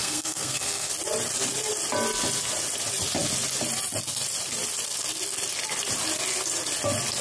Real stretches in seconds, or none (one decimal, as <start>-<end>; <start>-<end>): 0.9-7.2